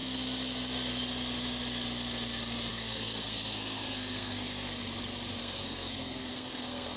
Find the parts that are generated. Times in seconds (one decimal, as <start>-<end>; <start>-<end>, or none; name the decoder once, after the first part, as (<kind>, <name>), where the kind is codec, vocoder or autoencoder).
2.7-4.8 (codec, SNAC); 5.4-7.0